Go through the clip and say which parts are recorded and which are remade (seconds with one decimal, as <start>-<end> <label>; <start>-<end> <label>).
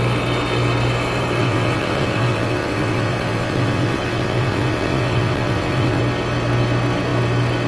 0.0-1.4 recorded; 1.4-6.0 remade; 6.0-7.7 recorded